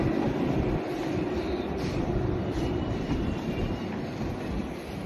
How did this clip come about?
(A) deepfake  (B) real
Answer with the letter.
A